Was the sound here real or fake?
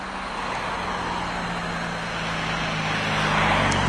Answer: real